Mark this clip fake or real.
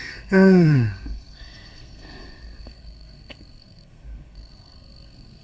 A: fake